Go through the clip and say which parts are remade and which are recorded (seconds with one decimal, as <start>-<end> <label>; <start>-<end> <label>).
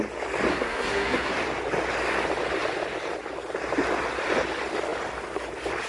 0.0-0.5 recorded; 0.5-1.3 remade; 1.3-5.9 recorded